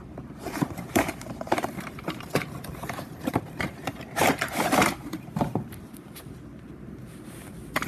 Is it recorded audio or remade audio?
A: remade